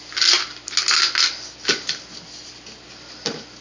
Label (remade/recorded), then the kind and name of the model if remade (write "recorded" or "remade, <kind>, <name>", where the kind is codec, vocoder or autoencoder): recorded